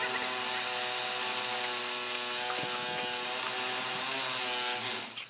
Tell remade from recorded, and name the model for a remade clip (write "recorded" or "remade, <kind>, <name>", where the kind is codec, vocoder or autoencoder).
recorded